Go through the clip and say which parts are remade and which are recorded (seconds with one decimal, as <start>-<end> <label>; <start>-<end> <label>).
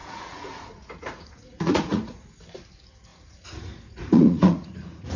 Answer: 0.0-2.4 remade; 2.4-3.1 recorded; 3.1-5.2 remade